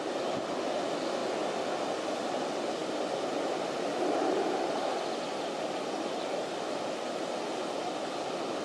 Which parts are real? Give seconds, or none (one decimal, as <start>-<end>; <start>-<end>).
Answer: 0.0-8.6